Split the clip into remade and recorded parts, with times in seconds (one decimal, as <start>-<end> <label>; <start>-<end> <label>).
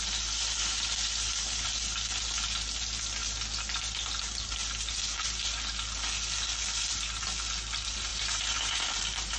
0.0-8.1 recorded; 8.1-9.4 remade